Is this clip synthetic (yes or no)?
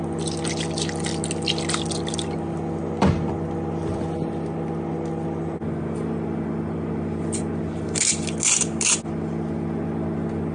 no